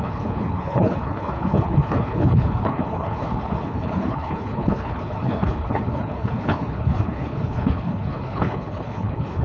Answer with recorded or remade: remade